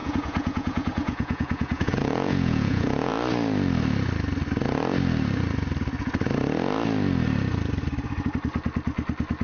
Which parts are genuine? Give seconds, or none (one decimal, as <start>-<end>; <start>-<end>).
3.1-9.4